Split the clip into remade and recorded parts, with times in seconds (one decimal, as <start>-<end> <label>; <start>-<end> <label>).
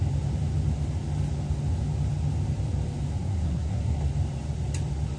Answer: 0.0-3.2 recorded; 3.2-4.0 remade; 4.0-5.2 recorded